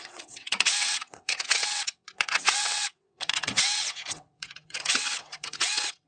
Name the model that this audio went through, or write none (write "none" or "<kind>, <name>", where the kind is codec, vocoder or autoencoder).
vocoder, WaveNeXt